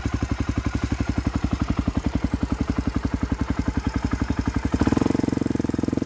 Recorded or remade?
remade